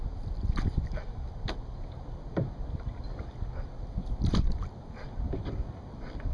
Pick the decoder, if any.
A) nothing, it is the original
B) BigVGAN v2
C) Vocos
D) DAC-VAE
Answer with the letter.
A